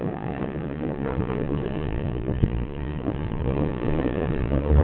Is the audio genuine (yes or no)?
no